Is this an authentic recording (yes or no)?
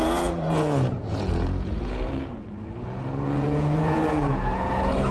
no